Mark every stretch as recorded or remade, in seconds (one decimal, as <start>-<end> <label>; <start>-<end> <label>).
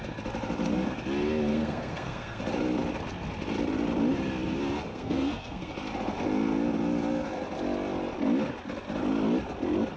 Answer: 0.0-1.5 recorded; 1.5-2.4 remade; 2.4-4.9 recorded; 4.9-5.7 remade; 5.7-10.0 recorded